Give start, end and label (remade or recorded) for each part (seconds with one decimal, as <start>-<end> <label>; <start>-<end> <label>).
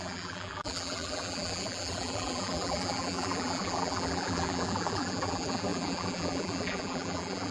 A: 0.0-7.5 remade